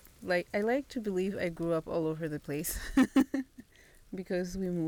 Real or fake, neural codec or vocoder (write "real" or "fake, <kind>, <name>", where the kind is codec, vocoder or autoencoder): real